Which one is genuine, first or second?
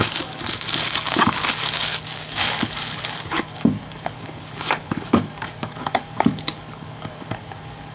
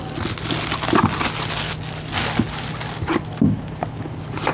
second